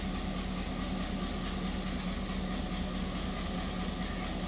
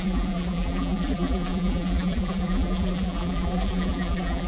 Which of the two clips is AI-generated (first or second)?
second